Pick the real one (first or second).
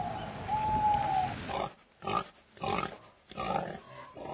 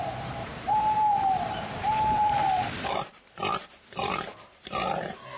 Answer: first